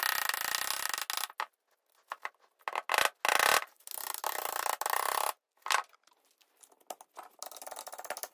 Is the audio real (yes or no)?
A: yes